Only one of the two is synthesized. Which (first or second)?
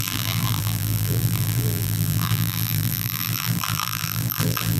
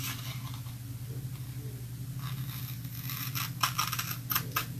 first